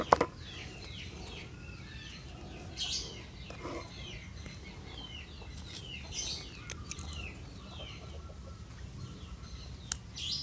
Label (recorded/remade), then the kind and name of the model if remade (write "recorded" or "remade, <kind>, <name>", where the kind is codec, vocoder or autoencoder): recorded